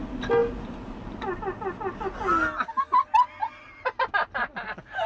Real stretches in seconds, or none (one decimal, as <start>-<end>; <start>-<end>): 0.0-5.1